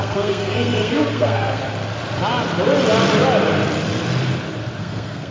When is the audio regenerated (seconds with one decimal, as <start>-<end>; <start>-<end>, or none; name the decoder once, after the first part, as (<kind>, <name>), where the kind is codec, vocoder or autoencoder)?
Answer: 0.0-1.6 (codec, SNAC); 4.8-5.3